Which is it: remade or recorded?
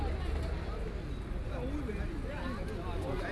recorded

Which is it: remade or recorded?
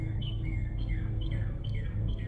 remade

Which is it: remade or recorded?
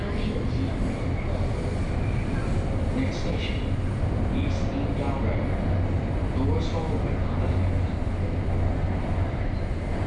recorded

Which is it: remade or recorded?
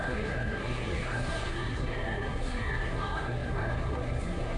remade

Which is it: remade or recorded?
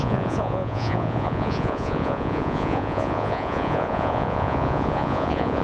remade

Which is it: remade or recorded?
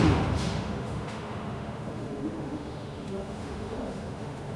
remade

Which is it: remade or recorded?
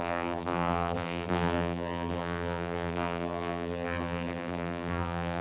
remade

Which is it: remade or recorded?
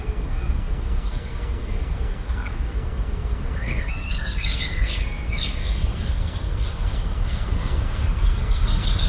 remade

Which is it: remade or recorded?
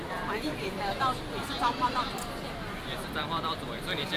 remade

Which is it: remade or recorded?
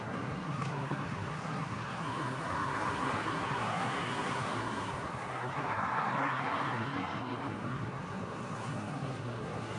remade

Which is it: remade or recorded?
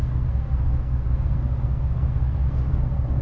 remade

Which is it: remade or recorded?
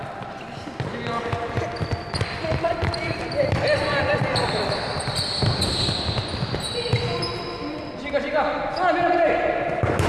recorded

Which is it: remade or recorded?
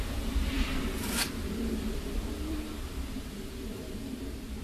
remade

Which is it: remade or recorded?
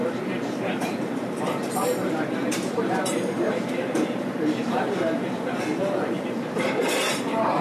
remade